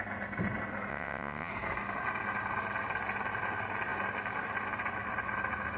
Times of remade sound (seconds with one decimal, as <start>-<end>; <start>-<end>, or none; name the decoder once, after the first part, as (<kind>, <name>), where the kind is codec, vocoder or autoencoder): 0.9-1.5 (vocoder, WaveNeXt)